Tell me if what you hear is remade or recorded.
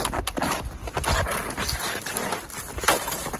recorded